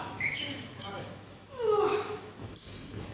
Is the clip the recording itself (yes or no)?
no